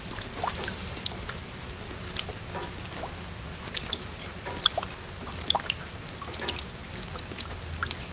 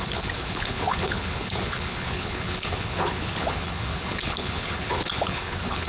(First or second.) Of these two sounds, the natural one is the first